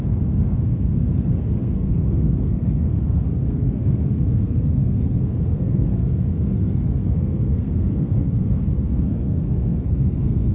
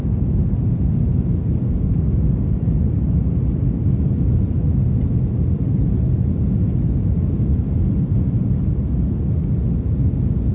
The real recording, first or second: second